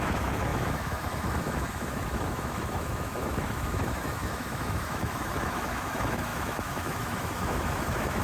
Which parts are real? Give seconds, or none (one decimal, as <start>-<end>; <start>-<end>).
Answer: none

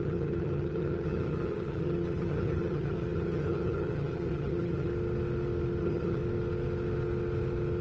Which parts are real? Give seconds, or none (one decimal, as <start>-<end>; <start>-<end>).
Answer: 4.9-5.8; 6.2-7.8

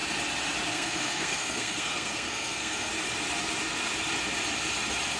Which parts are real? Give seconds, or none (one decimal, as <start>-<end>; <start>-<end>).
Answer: 0.0-0.7; 2.9-5.2

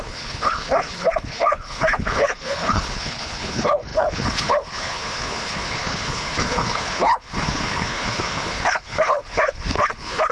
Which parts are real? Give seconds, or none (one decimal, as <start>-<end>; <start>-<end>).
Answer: none

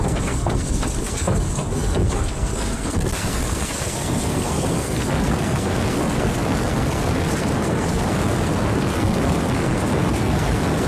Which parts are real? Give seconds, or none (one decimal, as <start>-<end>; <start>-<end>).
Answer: none

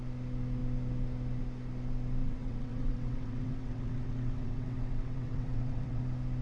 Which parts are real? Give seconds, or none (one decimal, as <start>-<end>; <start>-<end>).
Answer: 0.0-2.2; 6.0-6.4

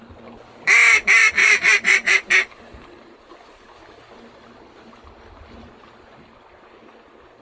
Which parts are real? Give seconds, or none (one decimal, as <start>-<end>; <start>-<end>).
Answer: 0.0-1.4; 3.2-7.4